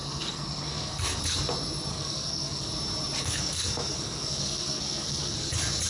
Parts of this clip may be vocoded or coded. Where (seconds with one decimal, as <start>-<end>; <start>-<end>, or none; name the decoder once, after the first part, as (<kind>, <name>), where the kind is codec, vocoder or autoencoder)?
0.0-1.2 (codec, SNAC); 1.9-2.7; 3.2-5.5

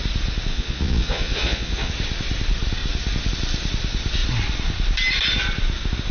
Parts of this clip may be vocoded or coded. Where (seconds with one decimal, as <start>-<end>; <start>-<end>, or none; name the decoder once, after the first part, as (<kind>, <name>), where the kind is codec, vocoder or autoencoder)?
0.5-1.9 (vocoder, Vocos)